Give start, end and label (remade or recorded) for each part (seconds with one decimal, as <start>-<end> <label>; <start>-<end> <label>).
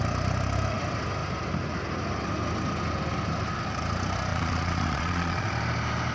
0.0-4.3 recorded; 4.3-5.5 remade; 5.5-6.1 recorded